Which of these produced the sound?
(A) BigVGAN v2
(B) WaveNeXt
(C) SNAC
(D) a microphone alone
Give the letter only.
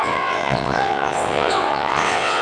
B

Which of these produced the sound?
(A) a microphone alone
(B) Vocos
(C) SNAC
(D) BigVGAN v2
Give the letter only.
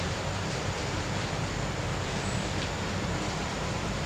D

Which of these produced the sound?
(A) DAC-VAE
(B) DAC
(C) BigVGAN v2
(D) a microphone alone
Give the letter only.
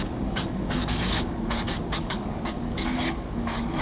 B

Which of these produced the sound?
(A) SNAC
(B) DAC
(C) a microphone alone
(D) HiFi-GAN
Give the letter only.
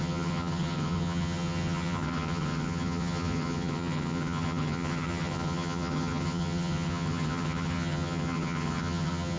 D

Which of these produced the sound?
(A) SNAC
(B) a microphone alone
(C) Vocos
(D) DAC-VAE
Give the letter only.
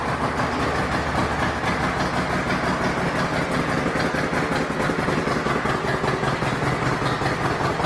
B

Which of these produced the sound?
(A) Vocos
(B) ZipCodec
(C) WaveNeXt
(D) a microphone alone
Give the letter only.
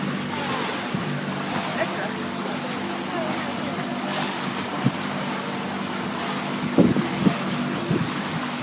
D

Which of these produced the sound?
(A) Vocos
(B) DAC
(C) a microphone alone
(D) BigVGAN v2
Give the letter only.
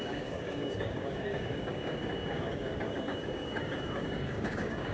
B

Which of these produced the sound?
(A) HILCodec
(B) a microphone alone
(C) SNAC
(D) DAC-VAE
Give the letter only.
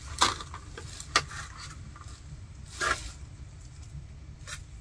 B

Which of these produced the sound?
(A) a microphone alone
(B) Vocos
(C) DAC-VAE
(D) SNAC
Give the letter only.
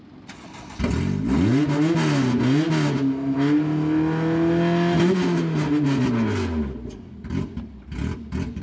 A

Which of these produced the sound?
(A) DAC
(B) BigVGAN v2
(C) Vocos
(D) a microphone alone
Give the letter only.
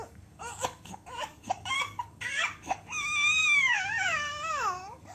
A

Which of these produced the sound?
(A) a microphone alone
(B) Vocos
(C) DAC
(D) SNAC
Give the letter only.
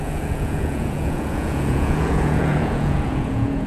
B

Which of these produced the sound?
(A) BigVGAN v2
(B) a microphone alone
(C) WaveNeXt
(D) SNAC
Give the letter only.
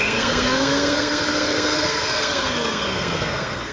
D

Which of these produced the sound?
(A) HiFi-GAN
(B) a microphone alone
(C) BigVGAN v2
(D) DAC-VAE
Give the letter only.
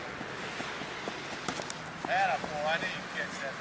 B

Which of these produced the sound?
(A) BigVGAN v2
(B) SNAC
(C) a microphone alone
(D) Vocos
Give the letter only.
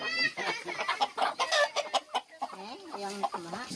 C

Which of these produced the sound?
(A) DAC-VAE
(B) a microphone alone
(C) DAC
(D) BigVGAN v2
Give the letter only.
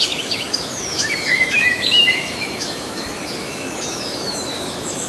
A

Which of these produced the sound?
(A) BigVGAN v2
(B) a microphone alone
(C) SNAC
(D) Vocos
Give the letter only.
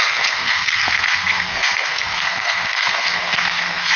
C